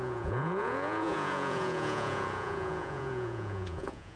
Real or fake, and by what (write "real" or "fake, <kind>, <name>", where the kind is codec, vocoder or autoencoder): fake, vocoder, Vocos